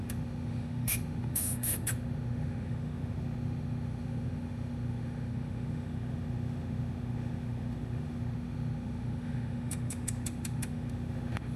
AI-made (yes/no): yes